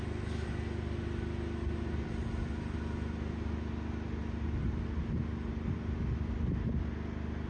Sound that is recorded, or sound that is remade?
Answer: recorded